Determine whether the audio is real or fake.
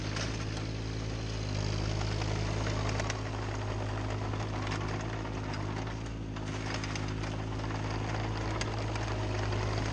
real